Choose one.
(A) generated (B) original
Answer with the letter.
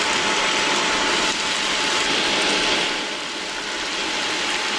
B